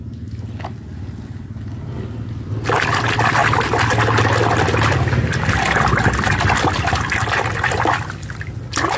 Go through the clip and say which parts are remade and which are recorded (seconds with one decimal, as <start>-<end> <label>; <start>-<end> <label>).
0.0-9.0 recorded